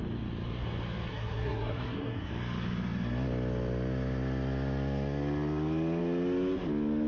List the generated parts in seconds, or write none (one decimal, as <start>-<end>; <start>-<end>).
1.1-2.3